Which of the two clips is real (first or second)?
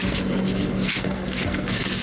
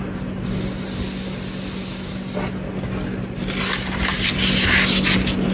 second